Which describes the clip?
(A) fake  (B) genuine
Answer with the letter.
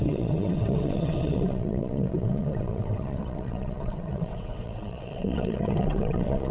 A